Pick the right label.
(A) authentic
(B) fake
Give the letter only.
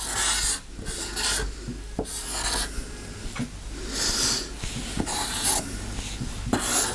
A